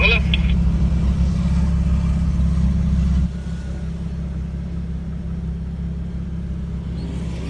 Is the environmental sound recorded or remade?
recorded